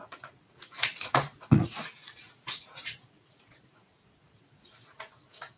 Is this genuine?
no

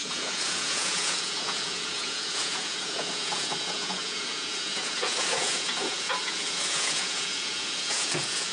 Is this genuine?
no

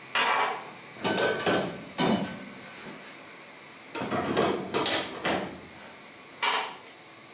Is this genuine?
yes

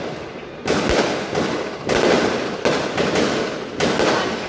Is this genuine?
yes